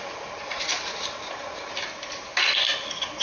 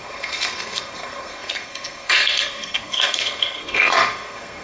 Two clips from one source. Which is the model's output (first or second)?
second